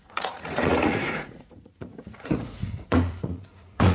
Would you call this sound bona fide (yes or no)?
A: no